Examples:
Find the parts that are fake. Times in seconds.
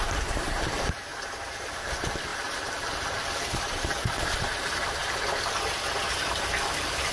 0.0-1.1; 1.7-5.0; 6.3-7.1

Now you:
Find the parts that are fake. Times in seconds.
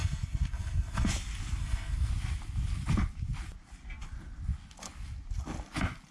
0.0-1.1; 1.6-2.1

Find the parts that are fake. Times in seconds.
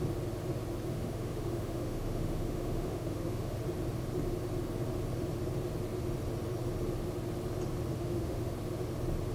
0.9-3.6; 7.9-8.4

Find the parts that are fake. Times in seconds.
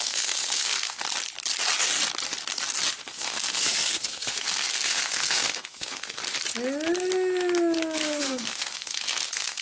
0.0-1.0; 3.1-6.2; 8.2-9.6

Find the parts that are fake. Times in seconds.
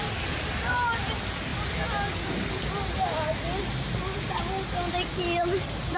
none